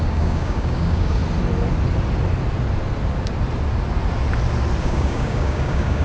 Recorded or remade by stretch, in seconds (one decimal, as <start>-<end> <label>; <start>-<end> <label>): 0.0-1.2 remade; 1.2-4.8 recorded; 4.8-6.0 remade